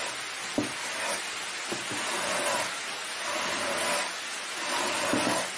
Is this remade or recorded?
recorded